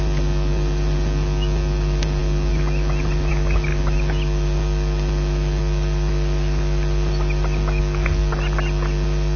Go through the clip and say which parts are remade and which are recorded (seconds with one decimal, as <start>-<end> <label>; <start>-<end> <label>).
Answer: 0.0-9.4 recorded